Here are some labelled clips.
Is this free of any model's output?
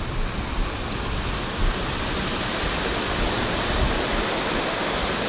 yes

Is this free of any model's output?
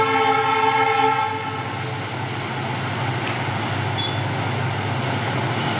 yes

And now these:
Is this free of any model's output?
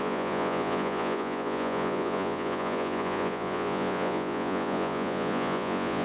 no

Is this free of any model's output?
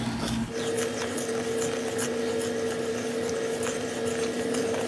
yes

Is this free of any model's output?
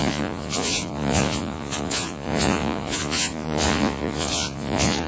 no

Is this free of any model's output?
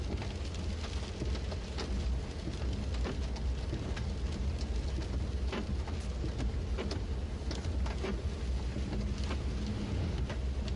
yes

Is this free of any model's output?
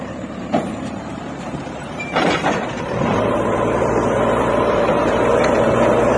no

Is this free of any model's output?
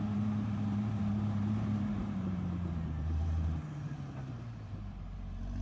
no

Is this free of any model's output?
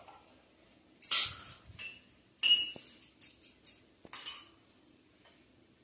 yes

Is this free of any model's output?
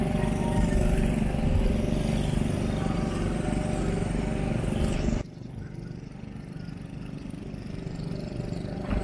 yes